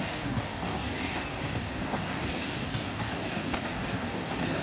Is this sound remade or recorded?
remade